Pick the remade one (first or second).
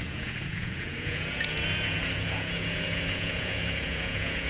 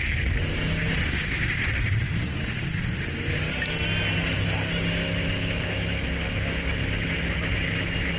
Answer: first